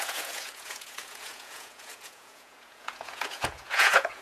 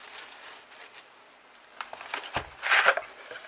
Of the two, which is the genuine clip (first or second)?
second